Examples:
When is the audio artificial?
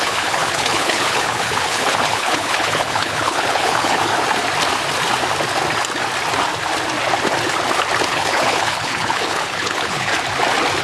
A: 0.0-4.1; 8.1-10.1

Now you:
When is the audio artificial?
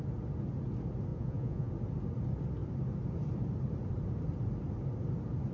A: 1.1-1.7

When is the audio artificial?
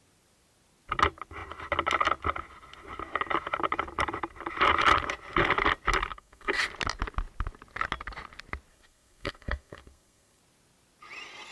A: 6.1-6.6; 8.7-10.4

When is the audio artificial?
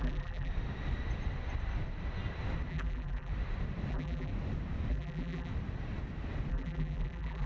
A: 0.0-0.5; 2.7-3.3; 3.9-4.3; 4.9-5.5; 6.5-7.5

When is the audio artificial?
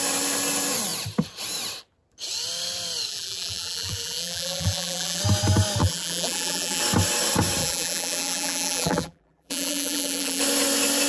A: 3.1-5.2; 5.8-6.8; 7.6-10.4